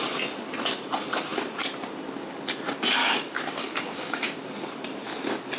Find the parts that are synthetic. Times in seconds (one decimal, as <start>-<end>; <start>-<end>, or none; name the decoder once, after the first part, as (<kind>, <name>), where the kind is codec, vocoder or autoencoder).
3.0-4.4 (codec, DAC)